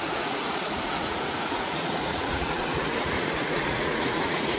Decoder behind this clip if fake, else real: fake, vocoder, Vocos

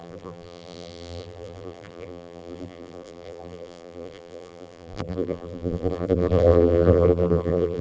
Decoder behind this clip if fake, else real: fake, vocoder, BigVGAN v2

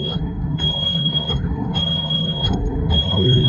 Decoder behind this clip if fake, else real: fake, codec, SNAC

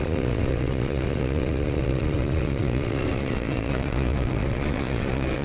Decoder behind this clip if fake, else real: fake, vocoder, Vocos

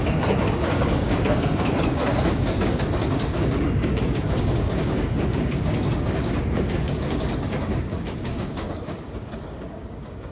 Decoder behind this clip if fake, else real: fake, codec, DAC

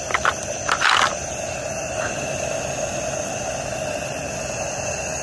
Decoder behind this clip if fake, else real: real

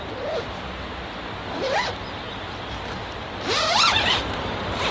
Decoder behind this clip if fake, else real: real